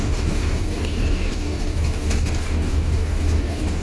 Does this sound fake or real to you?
fake